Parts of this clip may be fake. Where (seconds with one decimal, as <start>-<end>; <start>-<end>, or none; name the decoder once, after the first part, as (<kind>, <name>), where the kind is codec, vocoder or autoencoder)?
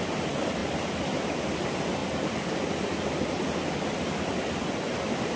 none